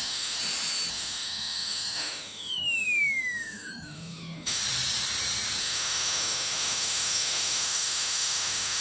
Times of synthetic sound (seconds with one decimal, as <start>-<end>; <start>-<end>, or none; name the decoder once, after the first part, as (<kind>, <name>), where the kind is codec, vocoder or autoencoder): 0.0-0.4 (autoencoder, DAC-VAE); 0.9-4.6; 5.6-8.8

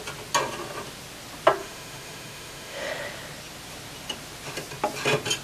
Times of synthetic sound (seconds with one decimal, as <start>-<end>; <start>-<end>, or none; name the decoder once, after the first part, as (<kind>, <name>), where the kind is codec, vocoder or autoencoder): 1.6-2.9 (autoencoder, DAC-VAE)

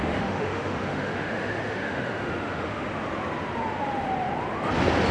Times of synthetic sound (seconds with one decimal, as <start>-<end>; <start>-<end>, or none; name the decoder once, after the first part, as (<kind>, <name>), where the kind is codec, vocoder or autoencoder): 0.0-2.9 (autoencoder, DAC-VAE)

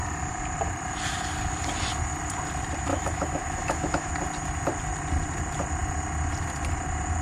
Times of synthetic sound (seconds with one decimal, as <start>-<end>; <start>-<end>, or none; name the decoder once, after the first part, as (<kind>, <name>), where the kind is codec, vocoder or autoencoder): 2.9-4.1 (autoencoder, DAC-VAE)

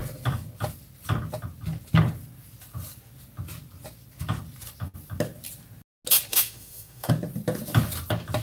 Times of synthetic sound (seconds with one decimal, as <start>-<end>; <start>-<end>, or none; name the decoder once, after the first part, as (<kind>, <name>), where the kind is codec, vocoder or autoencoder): 6.3-7.1 (autoencoder, DAC-VAE)

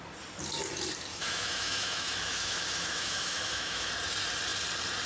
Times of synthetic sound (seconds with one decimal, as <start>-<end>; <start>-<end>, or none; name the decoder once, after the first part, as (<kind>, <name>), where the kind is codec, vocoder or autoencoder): 1.1-3.9 (autoencoder, DAC-VAE)

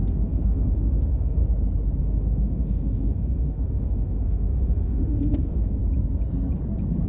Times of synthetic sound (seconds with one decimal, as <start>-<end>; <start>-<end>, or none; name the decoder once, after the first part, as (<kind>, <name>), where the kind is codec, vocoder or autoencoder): 0.0-1.4 (autoencoder, DAC-VAE); 2.0-5.8

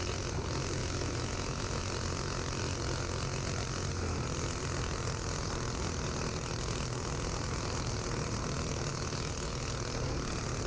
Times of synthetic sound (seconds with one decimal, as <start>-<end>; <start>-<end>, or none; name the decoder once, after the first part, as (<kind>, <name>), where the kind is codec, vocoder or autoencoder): 0.8-1.8 (autoencoder, DAC-VAE); 8.9-9.7